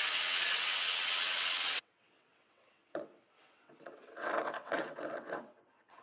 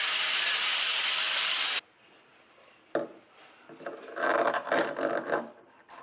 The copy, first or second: first